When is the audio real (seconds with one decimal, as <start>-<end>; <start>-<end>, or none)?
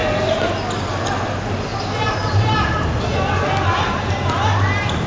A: 0.0-5.1